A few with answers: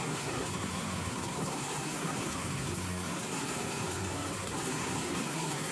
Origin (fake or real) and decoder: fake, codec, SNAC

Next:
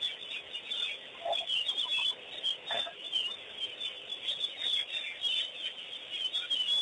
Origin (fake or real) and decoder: real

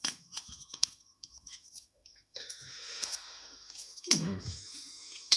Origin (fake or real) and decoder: fake, autoencoder, DAC-VAE